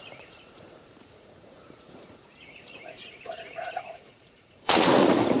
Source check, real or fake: fake